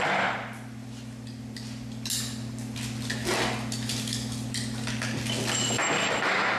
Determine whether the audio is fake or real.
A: real